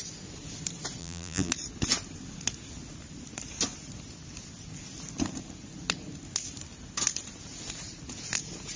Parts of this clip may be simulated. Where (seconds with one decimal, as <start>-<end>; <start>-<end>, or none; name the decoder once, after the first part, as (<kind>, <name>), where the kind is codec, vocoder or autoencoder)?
1.0-1.5 (vocoder, BigVGAN v2)